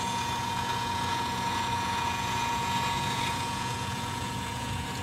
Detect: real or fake fake